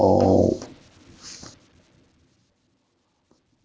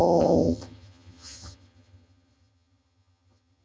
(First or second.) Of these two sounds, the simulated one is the second